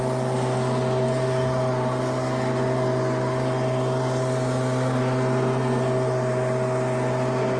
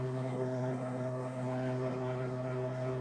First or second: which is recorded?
first